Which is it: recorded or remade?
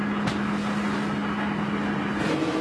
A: recorded